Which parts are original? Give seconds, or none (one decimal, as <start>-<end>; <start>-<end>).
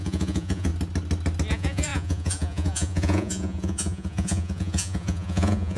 0.7-1.5